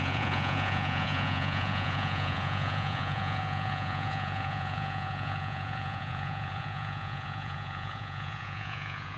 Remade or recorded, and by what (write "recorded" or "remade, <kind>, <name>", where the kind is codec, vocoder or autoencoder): remade, vocoder, Vocos